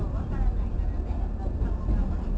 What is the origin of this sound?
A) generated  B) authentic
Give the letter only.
B